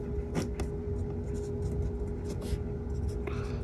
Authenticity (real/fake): real